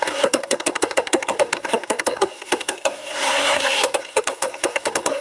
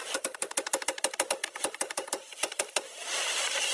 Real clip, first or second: second